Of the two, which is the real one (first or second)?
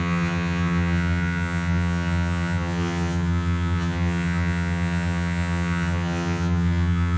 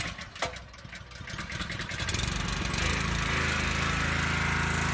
second